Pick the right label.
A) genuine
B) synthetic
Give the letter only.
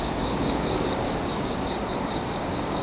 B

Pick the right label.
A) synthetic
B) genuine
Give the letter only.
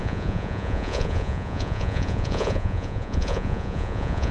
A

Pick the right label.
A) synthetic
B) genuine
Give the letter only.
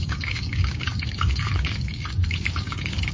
A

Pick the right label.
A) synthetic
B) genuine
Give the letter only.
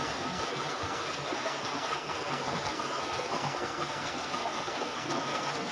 A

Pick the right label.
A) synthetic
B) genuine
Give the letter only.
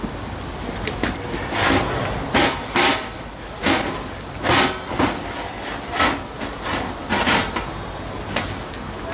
B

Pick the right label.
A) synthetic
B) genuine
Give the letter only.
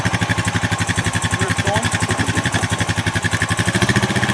A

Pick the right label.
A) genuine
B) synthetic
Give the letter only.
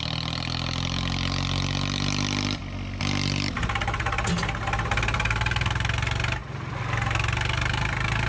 A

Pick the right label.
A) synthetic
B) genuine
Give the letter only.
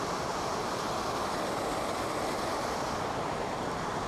B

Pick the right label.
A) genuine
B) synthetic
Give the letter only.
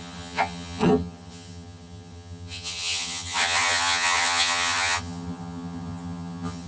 B